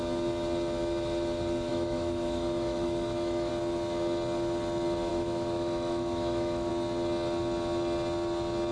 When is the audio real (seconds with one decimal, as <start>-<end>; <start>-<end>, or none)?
0.0-1.7; 3.5-5.1; 6.7-8.7